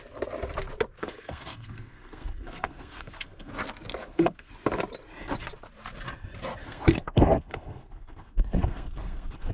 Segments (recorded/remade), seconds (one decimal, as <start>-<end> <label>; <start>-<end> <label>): 0.0-1.0 recorded; 1.0-3.5 remade; 3.5-4.0 recorded; 4.0-4.5 remade; 4.5-6.6 recorded; 6.6-9.5 remade